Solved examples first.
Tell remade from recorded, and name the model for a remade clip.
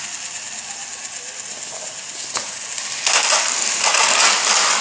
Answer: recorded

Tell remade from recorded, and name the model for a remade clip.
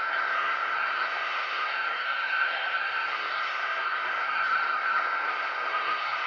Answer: remade, codec, SNAC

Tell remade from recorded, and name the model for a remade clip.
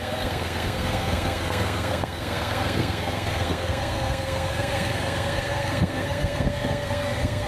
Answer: remade, codec, SNAC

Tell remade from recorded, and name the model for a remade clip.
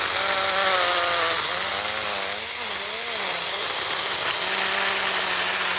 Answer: recorded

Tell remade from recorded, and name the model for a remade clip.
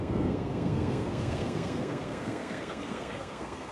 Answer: remade, codec, SNAC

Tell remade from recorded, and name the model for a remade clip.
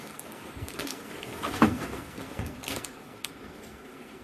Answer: remade, codec, SNAC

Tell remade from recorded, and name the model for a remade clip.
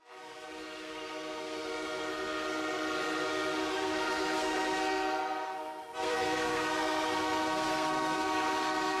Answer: remade, codec, SNAC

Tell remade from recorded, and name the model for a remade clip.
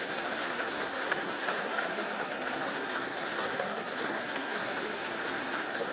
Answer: remade, codec, SNAC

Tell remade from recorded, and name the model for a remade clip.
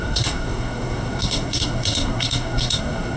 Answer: remade, codec, SNAC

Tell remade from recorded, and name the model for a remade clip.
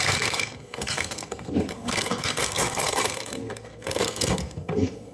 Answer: remade, codec, SNAC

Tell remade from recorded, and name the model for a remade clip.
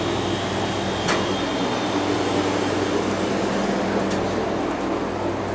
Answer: recorded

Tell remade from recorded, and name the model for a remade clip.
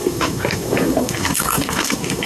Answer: remade, codec, SNAC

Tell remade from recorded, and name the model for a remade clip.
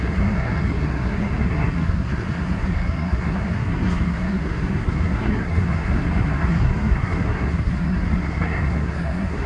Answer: remade, codec, SNAC